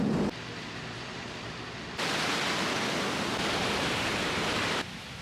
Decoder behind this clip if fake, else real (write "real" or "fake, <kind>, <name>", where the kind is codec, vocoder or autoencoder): real